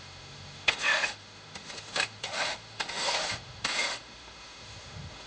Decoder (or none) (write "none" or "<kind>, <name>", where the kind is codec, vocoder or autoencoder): autoencoder, DAC-VAE